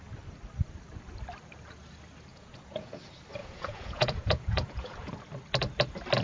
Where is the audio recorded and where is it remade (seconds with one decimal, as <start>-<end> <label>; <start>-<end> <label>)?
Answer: 0.0-2.3 recorded; 2.3-3.0 remade; 3.0-3.4 recorded; 3.4-5.1 remade; 5.1-6.2 recorded